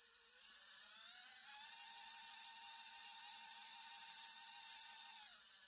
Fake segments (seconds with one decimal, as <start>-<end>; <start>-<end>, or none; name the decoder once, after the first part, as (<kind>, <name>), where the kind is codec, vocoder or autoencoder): none